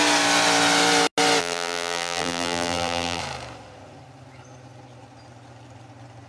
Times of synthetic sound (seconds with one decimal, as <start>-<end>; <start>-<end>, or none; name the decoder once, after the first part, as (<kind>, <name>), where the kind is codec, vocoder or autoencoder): 1.4-3.2 (vocoder, BigVGAN v2)